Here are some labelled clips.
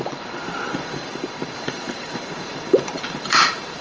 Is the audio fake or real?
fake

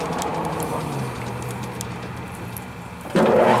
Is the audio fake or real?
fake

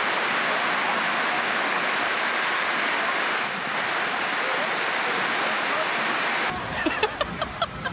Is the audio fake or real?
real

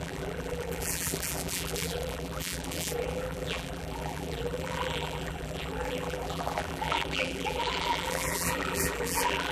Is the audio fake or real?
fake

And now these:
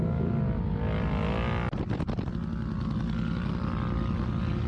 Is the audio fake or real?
real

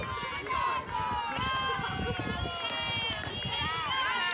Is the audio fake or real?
real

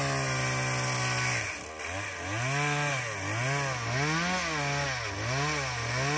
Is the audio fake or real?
real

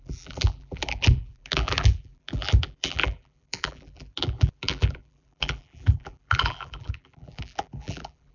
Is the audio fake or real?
fake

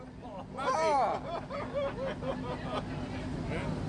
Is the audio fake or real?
real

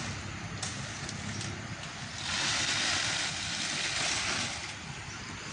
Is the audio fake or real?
real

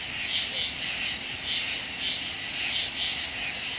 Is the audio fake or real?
real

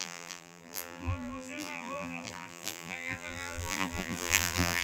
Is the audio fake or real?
fake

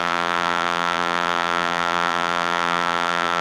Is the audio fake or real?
fake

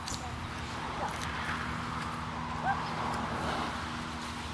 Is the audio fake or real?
real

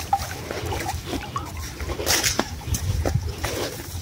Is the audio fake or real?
real